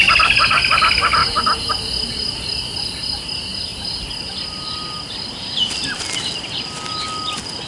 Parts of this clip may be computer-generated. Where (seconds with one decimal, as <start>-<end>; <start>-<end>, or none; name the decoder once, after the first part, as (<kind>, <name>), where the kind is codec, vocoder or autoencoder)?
none